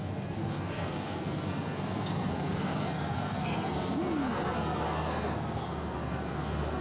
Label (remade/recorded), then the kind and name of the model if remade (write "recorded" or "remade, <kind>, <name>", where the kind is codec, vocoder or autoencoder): remade, codec, SNAC